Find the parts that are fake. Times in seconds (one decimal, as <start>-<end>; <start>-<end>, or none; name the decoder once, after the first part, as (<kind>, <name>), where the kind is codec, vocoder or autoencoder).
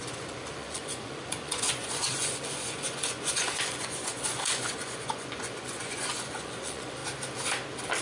0.0-7.0 (vocoder, Vocos)